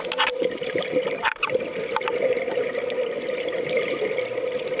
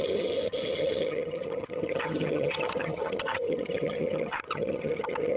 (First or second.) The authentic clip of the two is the first